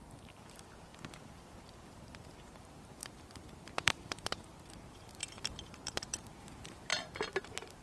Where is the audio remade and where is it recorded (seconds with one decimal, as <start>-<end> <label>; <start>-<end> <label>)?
0.0-0.9 remade; 0.9-2.4 recorded; 2.4-6.9 remade; 6.9-7.8 recorded